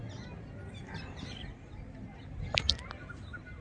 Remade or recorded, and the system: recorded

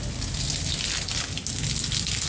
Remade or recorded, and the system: recorded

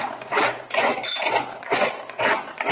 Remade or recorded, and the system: remade, vocoder, Vocos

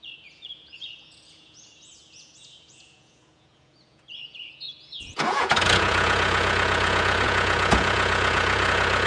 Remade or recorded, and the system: remade, vocoder, Vocos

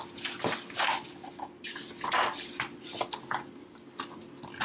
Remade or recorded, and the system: recorded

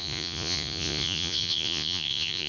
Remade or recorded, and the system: remade, vocoder, Vocos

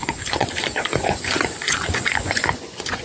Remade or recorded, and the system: remade, vocoder, Vocos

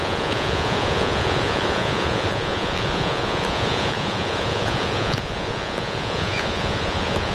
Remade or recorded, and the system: remade, vocoder, Vocos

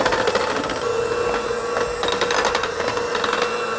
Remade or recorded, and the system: recorded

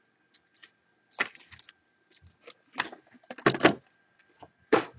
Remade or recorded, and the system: recorded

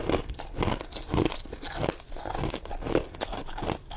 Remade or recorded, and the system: recorded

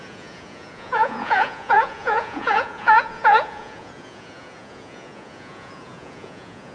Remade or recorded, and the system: remade, vocoder, Vocos